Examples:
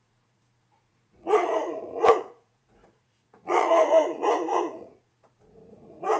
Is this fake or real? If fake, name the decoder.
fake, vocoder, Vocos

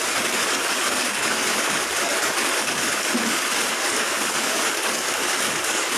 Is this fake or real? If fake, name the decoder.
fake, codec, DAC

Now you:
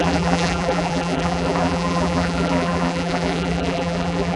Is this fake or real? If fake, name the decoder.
fake, vocoder, BigVGAN v2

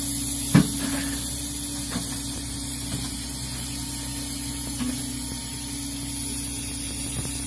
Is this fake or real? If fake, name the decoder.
real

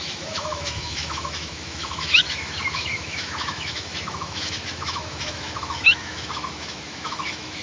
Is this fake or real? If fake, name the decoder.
fake, autoencoder, DAC-VAE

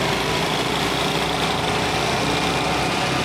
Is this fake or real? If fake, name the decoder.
real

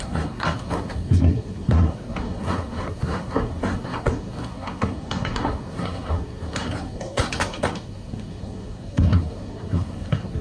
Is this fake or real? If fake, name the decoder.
fake, codec, SNAC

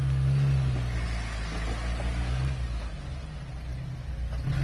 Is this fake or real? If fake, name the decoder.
real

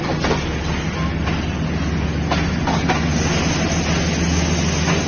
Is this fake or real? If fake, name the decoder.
real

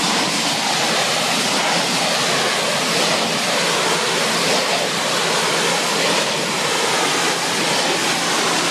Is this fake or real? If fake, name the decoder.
real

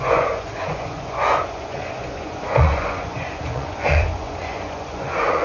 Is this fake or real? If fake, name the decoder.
fake, vocoder, Vocos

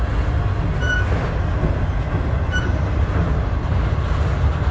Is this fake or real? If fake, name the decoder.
real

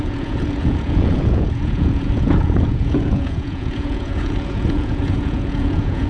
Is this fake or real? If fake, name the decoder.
fake, vocoder, Vocos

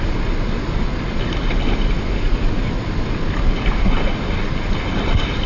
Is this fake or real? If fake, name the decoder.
real